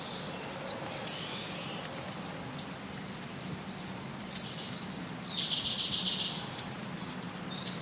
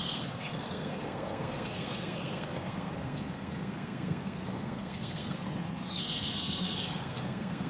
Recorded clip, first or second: first